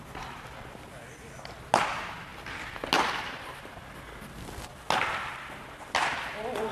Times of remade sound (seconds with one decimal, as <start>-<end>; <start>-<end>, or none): none